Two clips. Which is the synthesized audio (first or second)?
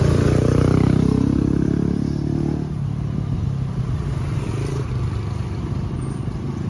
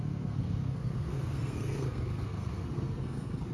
second